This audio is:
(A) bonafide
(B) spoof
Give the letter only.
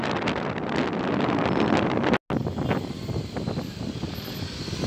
A